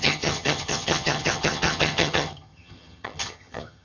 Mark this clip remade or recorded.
remade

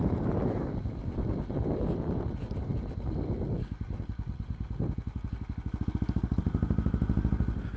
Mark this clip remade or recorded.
recorded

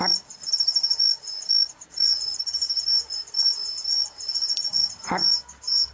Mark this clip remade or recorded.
recorded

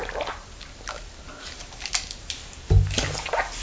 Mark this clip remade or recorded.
recorded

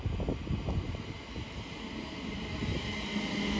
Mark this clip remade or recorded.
recorded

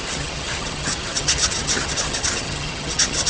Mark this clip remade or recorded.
remade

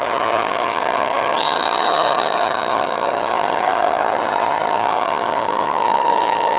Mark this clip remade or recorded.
remade